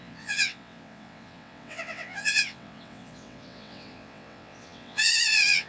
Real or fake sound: fake